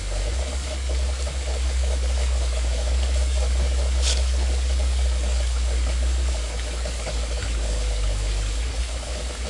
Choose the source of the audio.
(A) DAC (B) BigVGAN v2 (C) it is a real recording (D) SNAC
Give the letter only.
A